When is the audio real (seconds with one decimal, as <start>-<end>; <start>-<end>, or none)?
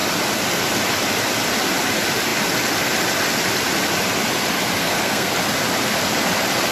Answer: 0.0-4.8; 5.3-6.7